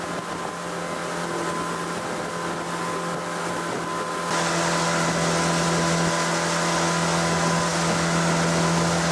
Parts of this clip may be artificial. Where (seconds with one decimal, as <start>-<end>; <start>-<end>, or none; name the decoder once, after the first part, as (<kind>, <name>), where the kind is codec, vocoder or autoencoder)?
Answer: none